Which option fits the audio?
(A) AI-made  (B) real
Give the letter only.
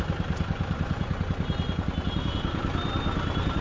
B